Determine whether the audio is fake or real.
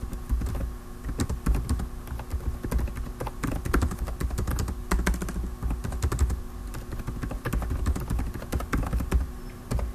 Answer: real